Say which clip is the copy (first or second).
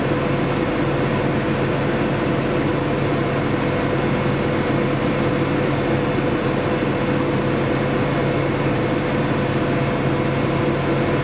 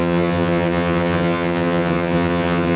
second